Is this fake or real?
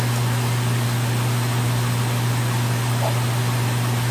real